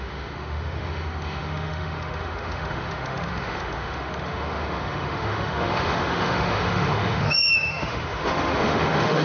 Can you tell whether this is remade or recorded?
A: remade